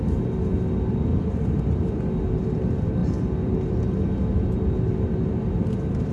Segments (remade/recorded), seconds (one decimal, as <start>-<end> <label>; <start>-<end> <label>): 0.0-1.1 recorded; 1.1-2.1 remade; 2.1-6.1 recorded